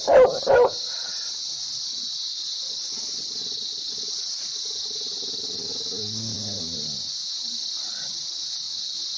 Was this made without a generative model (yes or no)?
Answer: yes